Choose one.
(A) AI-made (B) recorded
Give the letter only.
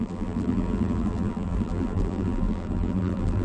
A